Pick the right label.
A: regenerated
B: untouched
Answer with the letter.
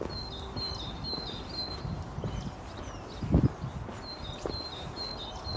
B